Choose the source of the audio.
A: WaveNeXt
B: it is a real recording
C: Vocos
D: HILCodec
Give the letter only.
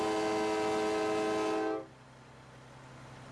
B